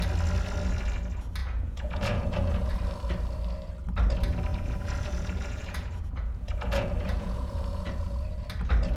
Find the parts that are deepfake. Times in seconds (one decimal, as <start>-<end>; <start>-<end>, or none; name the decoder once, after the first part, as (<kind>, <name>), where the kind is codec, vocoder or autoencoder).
1.4-2.7 (vocoder, Vocos); 4.5-8.3